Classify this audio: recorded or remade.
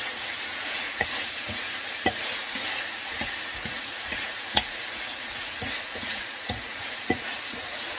remade